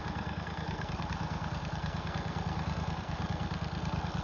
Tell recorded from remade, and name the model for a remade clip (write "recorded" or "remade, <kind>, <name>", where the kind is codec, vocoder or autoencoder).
remade, codec, SNAC